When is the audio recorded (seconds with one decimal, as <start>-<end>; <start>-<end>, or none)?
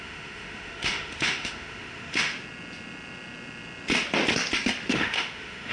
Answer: 2.3-4.9